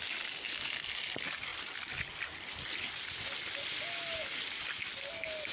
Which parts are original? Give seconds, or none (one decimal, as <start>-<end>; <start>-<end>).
0.0-5.5